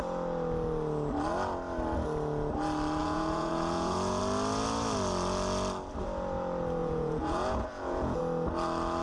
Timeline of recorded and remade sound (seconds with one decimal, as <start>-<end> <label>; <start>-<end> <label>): 0.0-3.0 recorded; 3.0-4.2 remade; 4.2-6.8 recorded; 6.8-8.2 remade; 8.2-9.0 recorded